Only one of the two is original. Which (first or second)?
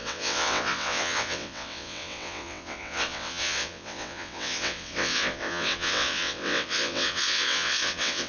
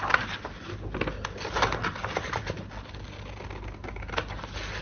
second